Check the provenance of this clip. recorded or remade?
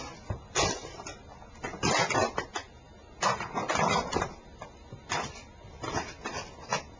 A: recorded